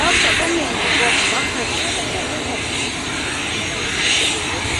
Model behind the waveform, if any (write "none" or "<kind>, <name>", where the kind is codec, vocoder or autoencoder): none